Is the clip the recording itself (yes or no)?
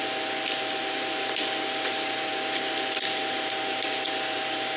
yes